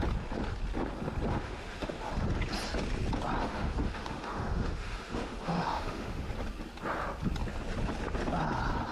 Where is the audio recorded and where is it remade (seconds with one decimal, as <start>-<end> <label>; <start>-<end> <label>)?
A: 0.0-1.3 recorded; 1.3-2.1 remade; 2.1-3.4 recorded; 3.4-6.3 remade; 6.3-8.9 recorded